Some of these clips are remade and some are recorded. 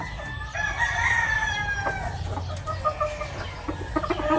recorded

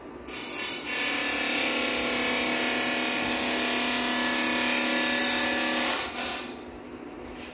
recorded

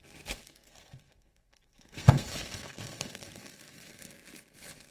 remade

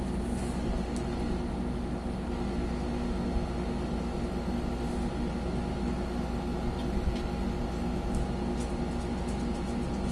recorded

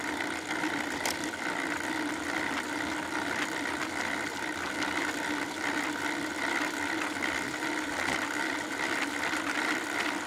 recorded